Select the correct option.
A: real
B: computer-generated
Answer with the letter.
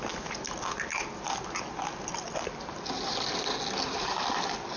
A